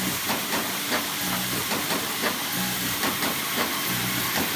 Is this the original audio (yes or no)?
no